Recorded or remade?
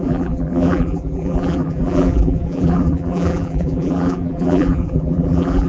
remade